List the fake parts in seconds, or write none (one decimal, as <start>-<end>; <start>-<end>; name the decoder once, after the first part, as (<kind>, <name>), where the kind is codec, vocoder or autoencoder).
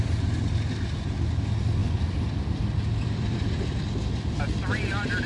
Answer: 1.8-3.8 (vocoder, BigVGAN v2)